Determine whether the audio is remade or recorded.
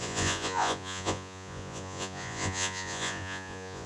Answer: remade